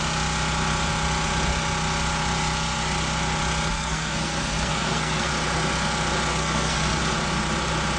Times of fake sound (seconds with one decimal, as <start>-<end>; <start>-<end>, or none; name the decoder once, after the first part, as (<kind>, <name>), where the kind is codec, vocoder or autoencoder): 3.7-5.3 (codec, SNAC); 6.3-7.0